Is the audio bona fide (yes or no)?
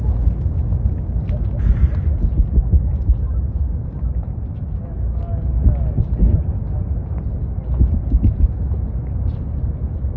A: yes